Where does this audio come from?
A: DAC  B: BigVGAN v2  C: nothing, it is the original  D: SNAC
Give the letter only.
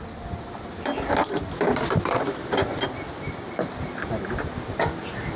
C